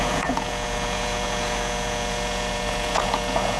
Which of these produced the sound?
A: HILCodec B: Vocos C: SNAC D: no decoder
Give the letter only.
B